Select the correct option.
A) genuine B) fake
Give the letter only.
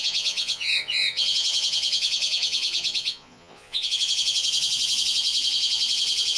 B